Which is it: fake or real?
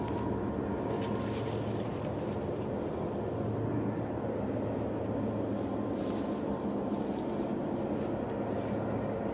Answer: real